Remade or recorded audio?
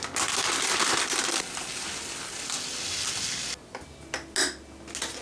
recorded